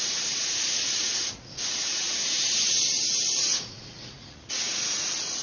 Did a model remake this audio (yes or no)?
yes